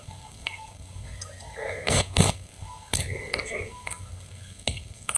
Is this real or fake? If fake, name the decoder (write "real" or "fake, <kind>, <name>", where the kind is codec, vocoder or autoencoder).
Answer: fake, codec, SNAC